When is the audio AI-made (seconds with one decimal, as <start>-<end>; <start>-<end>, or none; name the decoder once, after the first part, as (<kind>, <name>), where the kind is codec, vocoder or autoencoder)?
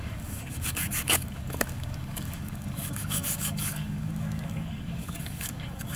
0.0-6.0 (codec, DAC)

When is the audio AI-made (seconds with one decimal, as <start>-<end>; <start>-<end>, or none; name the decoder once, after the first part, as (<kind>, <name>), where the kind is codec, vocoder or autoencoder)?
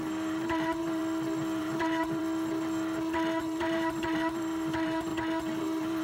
0.0-1.0 (vocoder, BigVGAN v2); 1.6-2.2; 3.4-5.1; 5.6-6.0